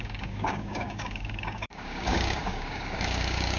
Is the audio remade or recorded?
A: remade